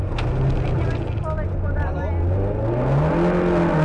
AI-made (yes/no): no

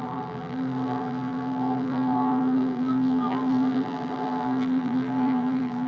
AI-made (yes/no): yes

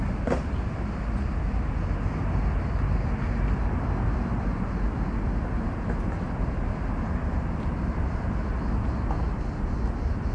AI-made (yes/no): no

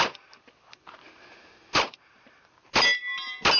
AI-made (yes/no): no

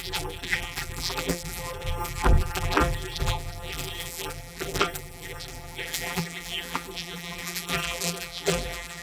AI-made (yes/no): yes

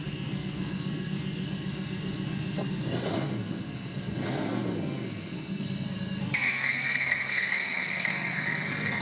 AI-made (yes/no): yes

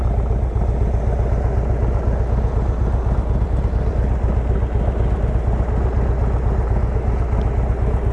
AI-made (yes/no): no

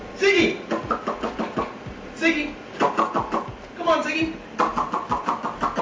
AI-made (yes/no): no